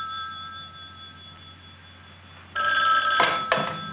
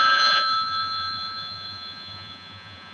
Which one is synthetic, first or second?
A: second